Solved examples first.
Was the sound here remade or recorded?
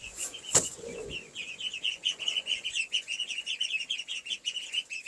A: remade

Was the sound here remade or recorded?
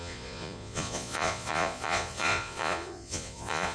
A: remade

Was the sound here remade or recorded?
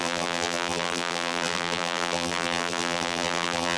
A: remade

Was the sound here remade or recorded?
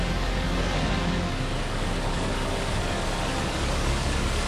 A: remade